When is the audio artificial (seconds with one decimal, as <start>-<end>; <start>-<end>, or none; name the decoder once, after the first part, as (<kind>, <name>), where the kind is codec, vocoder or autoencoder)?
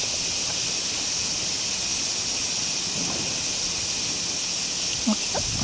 none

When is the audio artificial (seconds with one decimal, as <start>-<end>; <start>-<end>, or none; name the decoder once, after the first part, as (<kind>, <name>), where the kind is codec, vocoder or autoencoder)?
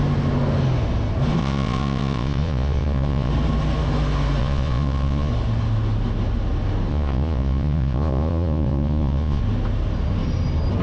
1.4-3.3 (vocoder, Vocos); 4.4-5.3; 6.9-9.4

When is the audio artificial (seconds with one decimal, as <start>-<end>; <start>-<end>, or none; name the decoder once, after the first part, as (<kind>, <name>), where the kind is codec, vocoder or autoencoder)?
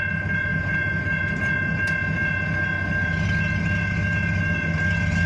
0.5-1.2 (vocoder, Vocos)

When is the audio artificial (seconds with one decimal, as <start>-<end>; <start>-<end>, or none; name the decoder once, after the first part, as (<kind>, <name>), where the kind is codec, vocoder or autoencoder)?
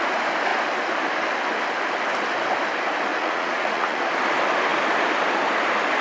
3.1-4.0 (vocoder, Vocos)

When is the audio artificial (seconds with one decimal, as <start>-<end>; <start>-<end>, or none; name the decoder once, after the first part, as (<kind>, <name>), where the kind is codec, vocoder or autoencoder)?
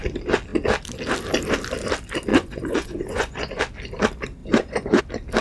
2.3-3.6 (vocoder, Vocos); 4.4-5.0